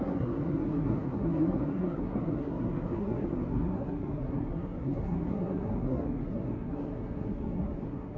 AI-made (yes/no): yes